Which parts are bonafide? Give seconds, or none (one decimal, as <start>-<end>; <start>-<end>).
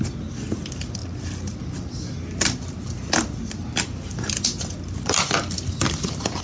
0.0-6.4